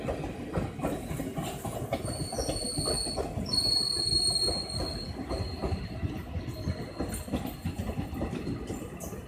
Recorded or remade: recorded